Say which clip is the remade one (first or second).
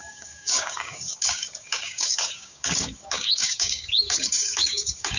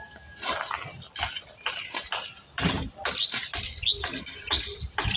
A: first